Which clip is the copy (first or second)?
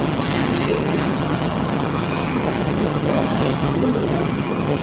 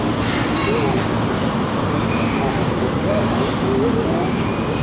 first